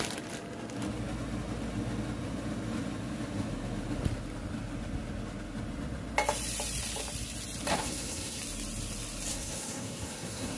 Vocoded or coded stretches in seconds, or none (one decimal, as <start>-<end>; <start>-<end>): 7.7-8.4; 9.3-10.6